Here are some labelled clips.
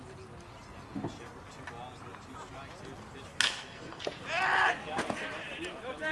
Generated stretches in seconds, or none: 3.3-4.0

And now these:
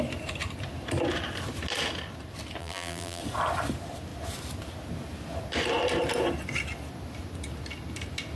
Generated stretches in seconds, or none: 2.6-3.2

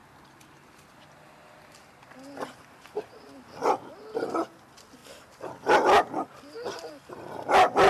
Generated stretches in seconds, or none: none

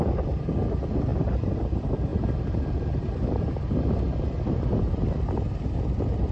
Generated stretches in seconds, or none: none